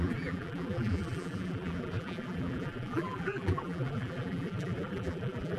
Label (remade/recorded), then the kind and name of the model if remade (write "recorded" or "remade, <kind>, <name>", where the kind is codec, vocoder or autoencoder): remade, vocoder, BigVGAN v2